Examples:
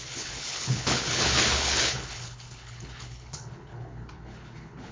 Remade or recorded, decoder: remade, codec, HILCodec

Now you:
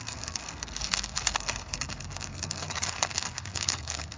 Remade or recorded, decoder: remade, codec, SNAC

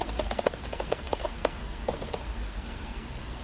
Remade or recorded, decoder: remade, codec, SNAC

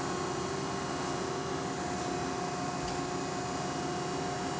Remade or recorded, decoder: recorded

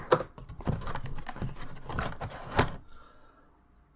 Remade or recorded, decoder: recorded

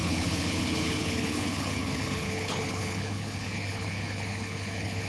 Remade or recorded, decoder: remade, codec, HILCodec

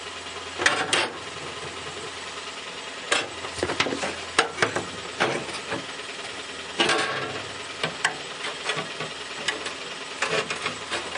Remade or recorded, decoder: recorded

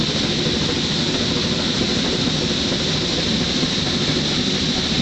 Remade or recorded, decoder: recorded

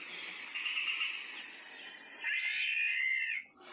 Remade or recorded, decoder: recorded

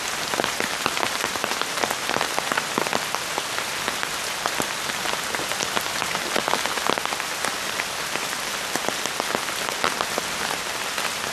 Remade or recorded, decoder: recorded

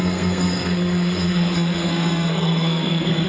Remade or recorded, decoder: remade, codec, SNAC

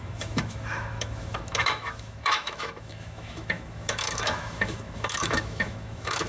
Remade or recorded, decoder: remade, autoencoder, DAC-VAE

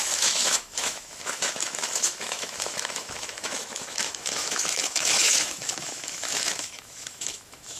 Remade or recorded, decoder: remade, autoencoder, DAC-VAE